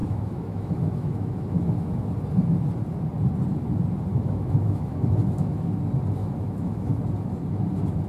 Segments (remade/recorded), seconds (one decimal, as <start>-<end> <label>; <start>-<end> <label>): 0.0-2.1 remade; 2.1-4.1 recorded; 4.1-5.8 remade; 5.8-6.2 recorded; 6.2-7.0 remade; 7.0-8.1 recorded